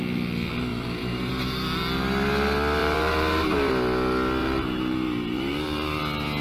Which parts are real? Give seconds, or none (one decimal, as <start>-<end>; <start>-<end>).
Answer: 0.0-0.7; 1.3-2.8; 3.7-4.4; 6.0-6.4